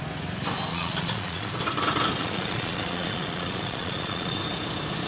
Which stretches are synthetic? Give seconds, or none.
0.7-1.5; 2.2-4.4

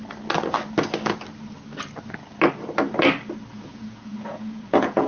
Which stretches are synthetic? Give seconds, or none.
3.5-5.1

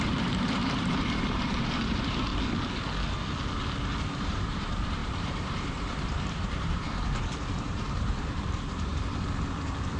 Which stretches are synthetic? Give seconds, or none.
0.0-2.3; 4.0-8.9

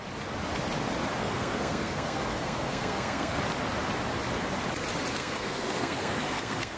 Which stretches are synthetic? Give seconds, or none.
1.2-3.4; 5.2-6.8